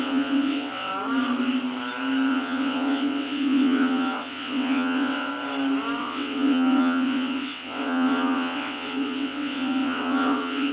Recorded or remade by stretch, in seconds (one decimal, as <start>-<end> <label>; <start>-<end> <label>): 0.0-0.9 remade; 0.9-2.3 recorded; 2.3-5.3 remade; 5.3-6.0 recorded; 6.0-10.7 remade